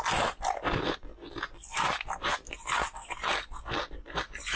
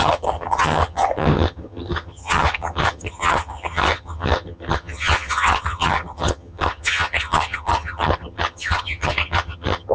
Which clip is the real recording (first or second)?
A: first